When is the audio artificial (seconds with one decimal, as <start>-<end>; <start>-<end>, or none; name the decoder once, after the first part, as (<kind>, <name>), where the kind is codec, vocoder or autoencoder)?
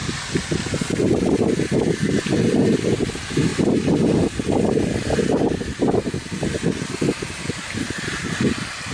none